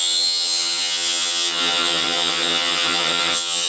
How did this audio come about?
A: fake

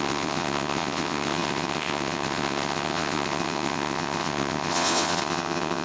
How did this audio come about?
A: fake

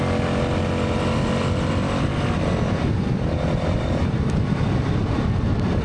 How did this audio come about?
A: real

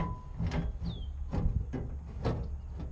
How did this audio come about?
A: real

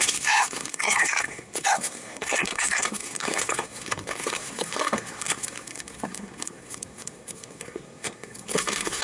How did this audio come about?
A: fake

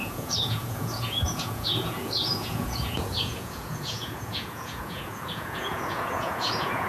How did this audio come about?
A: fake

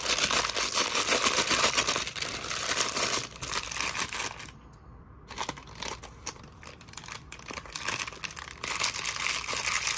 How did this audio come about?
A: real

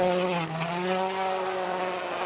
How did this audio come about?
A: real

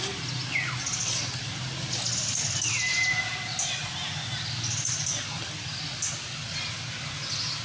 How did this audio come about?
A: real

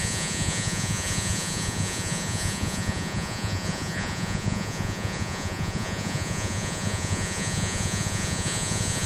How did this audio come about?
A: fake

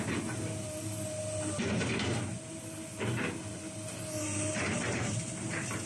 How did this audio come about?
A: real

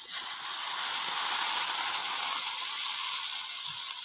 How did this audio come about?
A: real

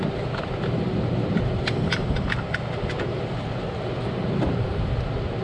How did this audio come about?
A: real